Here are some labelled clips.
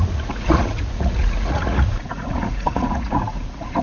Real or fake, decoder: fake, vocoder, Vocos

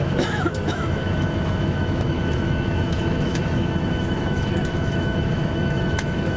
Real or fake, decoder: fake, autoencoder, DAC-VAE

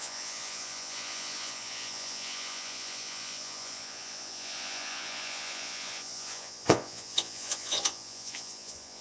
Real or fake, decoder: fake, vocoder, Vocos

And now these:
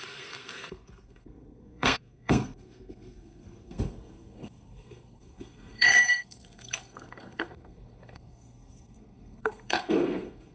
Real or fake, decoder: fake, codec, SNAC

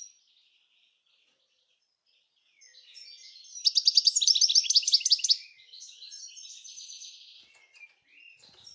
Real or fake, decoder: real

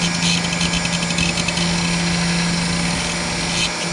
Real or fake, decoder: real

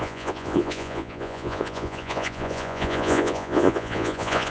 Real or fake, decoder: fake, vocoder, Vocos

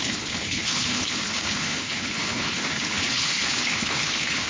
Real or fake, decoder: fake, codec, HILCodec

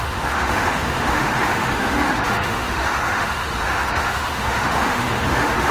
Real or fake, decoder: fake, autoencoder, DAC-VAE